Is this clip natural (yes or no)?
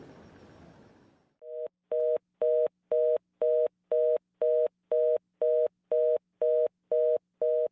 yes